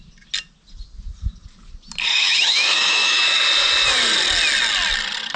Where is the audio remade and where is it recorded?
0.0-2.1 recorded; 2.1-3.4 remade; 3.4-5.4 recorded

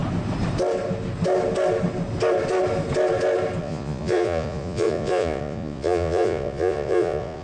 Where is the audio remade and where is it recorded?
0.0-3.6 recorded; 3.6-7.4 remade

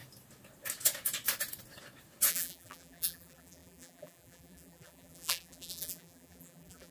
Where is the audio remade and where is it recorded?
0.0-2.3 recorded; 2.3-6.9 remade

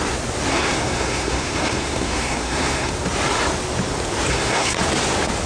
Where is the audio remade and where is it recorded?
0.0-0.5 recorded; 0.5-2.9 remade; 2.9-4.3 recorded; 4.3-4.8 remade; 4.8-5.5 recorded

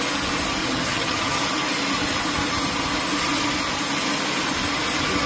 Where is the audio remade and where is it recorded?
0.0-0.6 recorded; 0.6-1.4 remade; 1.4-5.3 recorded